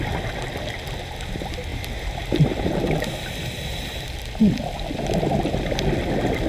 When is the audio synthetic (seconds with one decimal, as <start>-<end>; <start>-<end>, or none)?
1.7-2.8